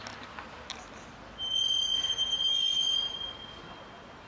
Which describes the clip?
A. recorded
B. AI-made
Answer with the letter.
A